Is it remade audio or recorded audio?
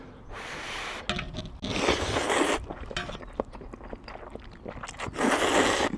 recorded